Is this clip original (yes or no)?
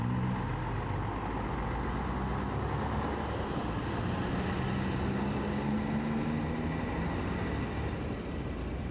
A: yes